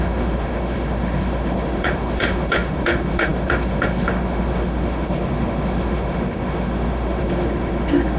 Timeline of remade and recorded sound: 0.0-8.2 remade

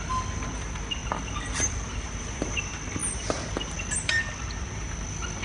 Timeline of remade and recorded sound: 0.0-1.0 recorded; 1.0-2.6 remade; 2.6-5.4 recorded

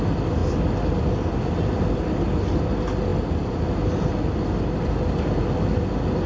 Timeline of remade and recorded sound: 0.0-6.3 recorded

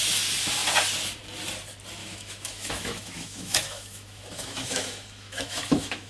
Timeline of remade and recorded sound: 0.0-2.0 recorded; 2.0-6.1 remade

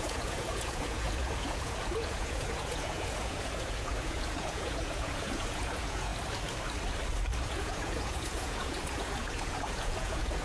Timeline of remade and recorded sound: 0.0-6.1 remade; 6.1-7.5 recorded; 7.5-10.4 remade

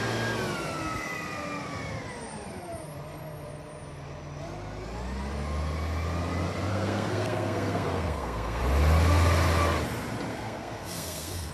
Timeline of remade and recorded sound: 0.0-6.7 recorded; 6.7-8.6 remade; 8.6-10.3 recorded; 10.3-11.5 remade

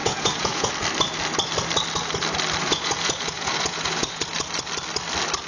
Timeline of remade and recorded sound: 0.0-0.7 remade; 0.7-2.6 recorded; 2.6-4.2 remade; 4.2-5.5 recorded